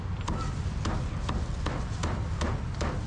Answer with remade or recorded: recorded